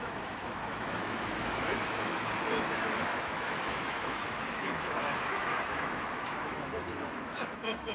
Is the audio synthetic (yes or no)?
yes